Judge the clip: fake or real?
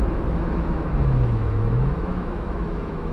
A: fake